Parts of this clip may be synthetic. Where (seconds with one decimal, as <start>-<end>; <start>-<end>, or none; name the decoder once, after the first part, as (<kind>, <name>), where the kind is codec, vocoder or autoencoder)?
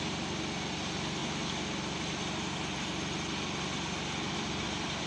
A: none